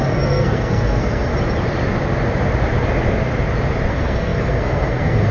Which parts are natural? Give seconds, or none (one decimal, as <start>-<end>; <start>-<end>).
1.3-3.9